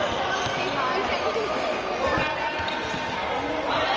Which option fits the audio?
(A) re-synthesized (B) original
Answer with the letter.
B